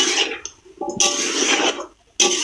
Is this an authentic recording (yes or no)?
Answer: yes